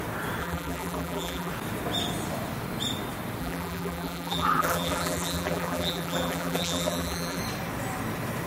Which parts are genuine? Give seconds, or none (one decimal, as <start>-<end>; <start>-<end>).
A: 0.0-0.4; 1.5-3.4; 7.4-8.5

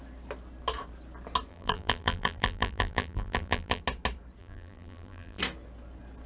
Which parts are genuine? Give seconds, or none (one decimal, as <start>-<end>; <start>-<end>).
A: 0.0-1.5; 3.8-4.4; 5.4-6.3

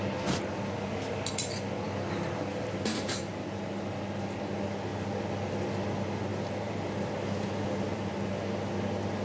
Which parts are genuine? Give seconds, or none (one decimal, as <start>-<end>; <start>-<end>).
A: 0.0-2.5; 3.4-6.3; 8.3-9.2